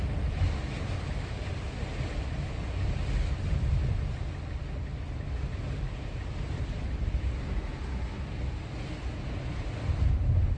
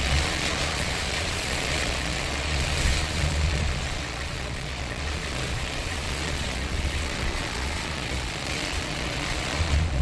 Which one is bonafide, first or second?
first